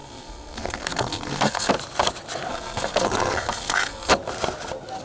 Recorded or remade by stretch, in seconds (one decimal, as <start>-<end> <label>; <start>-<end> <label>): 0.0-1.7 remade; 1.7-2.5 recorded; 2.5-4.1 remade; 4.1-5.0 recorded